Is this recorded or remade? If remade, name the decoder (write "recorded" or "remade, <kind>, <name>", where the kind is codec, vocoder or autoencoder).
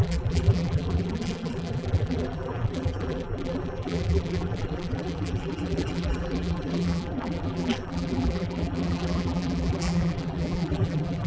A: remade, vocoder, BigVGAN v2